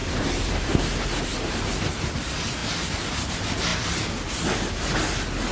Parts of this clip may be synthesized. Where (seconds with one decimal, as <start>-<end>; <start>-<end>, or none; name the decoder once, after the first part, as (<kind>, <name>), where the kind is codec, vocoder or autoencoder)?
0.0-1.8 (vocoder, BigVGAN v2); 3.7-4.3